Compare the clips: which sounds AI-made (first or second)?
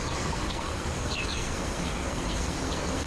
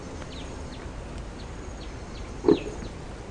first